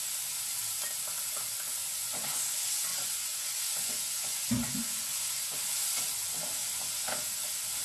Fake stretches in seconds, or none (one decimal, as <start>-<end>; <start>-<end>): 1.8-2.4; 2.9-5.6; 6.6-7.3